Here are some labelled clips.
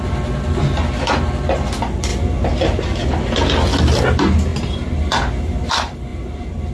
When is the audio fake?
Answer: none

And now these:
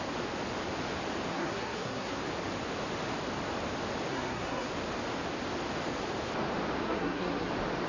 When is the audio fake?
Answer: 1.3-2.2 (codec, SNAC); 4.1-4.7; 6.8-7.5